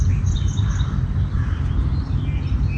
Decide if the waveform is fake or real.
fake